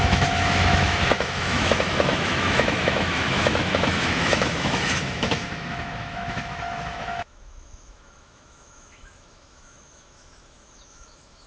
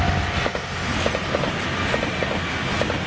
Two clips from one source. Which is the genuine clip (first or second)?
second